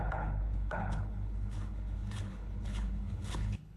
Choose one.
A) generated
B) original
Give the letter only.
A